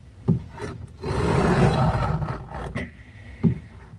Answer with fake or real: real